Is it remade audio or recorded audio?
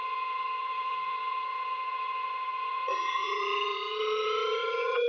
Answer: remade